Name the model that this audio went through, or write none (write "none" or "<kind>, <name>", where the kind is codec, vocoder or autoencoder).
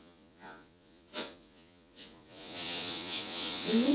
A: vocoder, Vocos